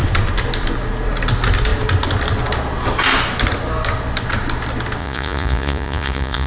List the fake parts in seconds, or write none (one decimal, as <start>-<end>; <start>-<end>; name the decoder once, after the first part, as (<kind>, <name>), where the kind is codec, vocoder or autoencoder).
5.0-6.5 (vocoder, Vocos)